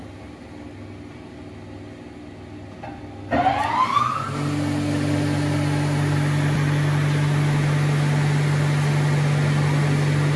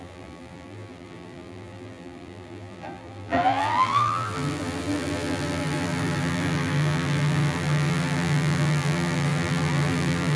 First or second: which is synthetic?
second